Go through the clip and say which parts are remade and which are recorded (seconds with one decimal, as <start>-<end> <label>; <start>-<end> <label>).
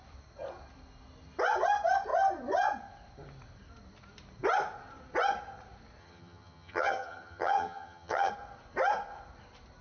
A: 0.0-6.0 recorded; 6.0-8.3 remade; 8.3-9.8 recorded